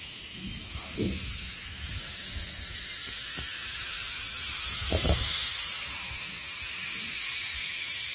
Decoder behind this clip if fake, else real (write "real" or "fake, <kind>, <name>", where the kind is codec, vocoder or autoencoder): fake, autoencoder, DAC-VAE